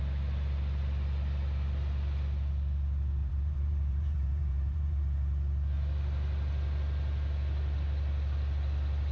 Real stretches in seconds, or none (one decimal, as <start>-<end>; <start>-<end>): 0.0-3.2; 5.0-9.1